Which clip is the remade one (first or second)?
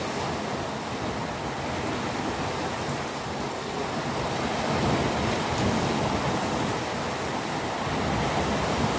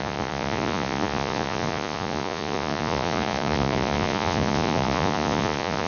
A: second